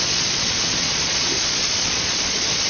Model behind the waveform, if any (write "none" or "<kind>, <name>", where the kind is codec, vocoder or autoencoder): vocoder, Vocos